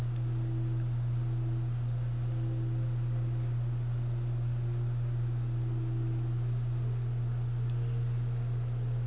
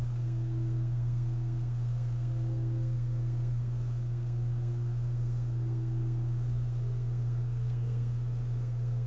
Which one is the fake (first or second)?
second